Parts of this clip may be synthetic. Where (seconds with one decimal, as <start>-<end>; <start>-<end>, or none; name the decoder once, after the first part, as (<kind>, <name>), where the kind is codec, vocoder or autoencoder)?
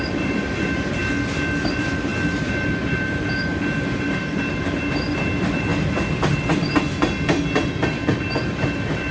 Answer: 0.0-1.0 (vocoder, BigVGAN v2); 1.6-5.7; 8.0-9.1